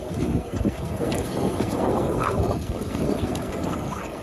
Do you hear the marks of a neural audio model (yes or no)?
yes